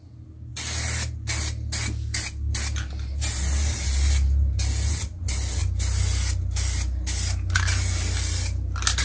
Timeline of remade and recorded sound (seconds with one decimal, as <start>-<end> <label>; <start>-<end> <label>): 0.0-9.0 recorded